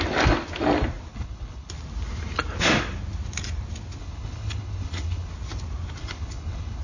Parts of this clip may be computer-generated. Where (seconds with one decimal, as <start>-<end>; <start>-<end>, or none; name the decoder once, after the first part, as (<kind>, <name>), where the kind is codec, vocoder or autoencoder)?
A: 1.1-1.7 (codec, HILCodec); 4.0-5.3; 6.0-6.8